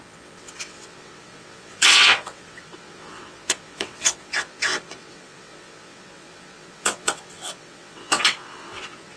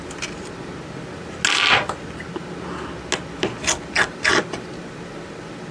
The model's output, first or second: first